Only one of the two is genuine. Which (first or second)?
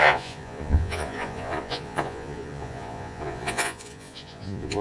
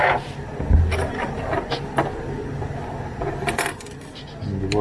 second